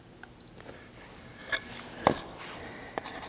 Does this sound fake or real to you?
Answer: real